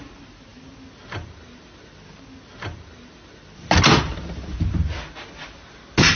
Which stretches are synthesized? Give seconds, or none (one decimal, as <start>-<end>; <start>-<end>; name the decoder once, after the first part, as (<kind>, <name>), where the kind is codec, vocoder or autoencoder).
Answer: none